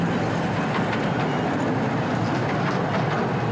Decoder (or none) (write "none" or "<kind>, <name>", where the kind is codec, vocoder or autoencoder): none